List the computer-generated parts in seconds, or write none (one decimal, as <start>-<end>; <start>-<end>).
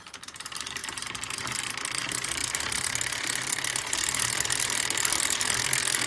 none